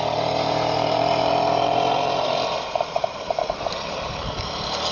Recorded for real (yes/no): no